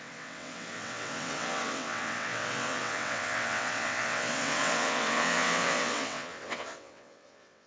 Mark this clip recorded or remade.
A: remade